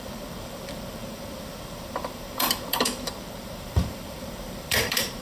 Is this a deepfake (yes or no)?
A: yes